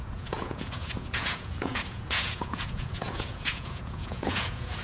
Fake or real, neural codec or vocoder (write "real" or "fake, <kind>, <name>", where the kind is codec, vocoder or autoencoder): fake, vocoder, Vocos